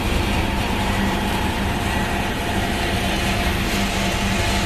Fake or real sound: fake